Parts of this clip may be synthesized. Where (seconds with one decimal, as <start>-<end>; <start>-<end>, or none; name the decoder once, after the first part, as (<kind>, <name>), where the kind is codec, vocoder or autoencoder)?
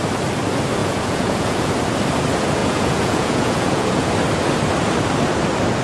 0.8-1.7 (vocoder, Vocos); 2.6-4.1